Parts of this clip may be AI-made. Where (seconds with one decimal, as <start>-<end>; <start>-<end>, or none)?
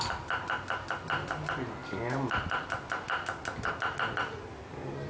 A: none